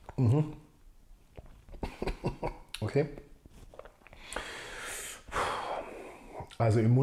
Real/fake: real